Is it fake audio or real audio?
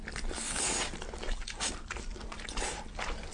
real